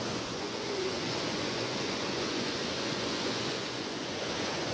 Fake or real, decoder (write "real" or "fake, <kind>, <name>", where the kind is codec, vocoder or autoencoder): fake, vocoder, Vocos